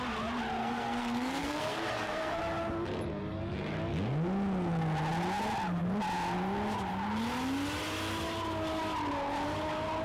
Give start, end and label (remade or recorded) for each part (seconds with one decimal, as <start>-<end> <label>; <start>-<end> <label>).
0.0-0.6 recorded; 0.6-2.4 remade; 2.4-10.0 recorded